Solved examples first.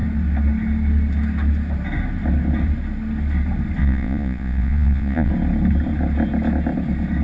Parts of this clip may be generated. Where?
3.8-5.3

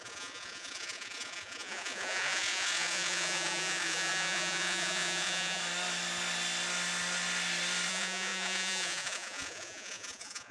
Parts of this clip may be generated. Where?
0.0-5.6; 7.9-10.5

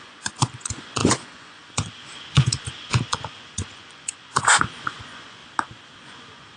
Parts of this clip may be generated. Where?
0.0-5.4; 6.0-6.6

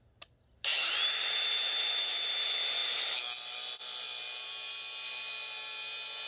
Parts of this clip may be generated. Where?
none

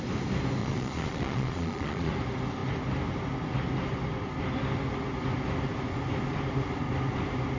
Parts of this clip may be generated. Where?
0.6-2.1

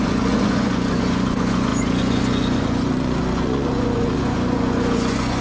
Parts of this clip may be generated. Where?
0.0-5.4

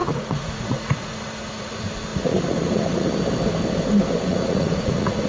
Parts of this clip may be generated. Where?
0.0-1.7; 2.1-3.1; 4.3-5.3

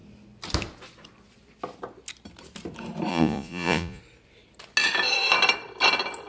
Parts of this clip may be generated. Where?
3.1-4.0